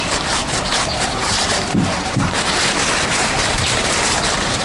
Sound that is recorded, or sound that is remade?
remade